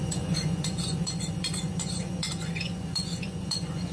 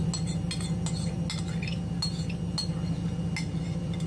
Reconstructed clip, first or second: first